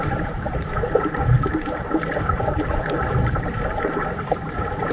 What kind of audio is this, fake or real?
fake